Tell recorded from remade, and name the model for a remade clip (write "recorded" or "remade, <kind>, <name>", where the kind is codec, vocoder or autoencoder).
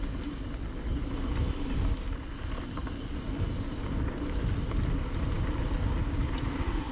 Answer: recorded